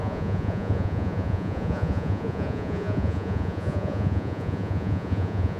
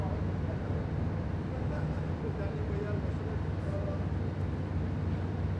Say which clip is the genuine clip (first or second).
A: second